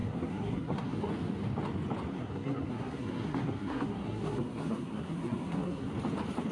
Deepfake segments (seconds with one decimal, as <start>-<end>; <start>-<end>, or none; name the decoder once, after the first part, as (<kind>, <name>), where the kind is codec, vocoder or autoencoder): 0.0-1.1 (codec, SNAC); 2.1-5.9

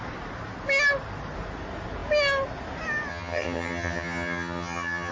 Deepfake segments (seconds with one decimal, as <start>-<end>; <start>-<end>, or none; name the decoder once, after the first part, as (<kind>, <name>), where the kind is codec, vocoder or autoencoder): 3.1-5.1 (vocoder, HiFi-GAN)

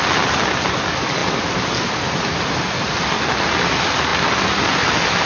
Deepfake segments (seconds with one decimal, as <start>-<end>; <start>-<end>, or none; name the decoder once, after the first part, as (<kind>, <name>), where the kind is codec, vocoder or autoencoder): none